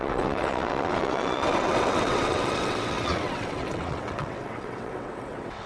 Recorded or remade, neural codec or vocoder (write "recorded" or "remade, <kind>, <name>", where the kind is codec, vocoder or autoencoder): remade, vocoder, WaveNeXt